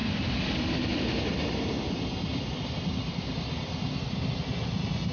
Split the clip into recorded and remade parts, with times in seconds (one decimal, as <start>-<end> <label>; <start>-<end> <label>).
0.0-2.3 recorded; 2.3-4.3 remade; 4.3-5.1 recorded